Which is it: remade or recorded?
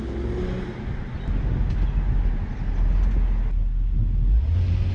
recorded